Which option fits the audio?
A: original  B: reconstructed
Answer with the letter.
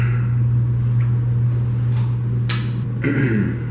A